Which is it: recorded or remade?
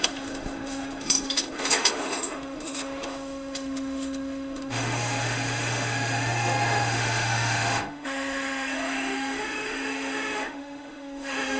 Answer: remade